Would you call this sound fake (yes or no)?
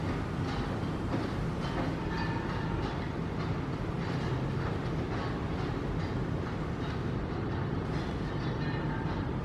no